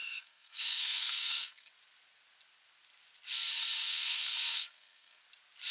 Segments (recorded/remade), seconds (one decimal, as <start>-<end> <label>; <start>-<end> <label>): 0.0-1.7 remade; 1.7-3.9 recorded; 3.9-5.2 remade; 5.2-5.7 recorded